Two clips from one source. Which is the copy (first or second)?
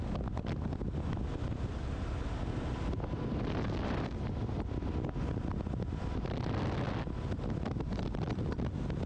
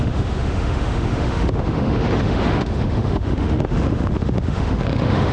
second